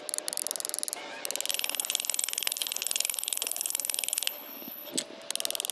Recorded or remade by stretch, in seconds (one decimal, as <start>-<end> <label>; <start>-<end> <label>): 0.0-1.5 recorded; 1.5-4.9 remade; 4.9-5.7 recorded